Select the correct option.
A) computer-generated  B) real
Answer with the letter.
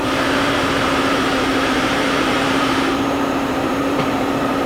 A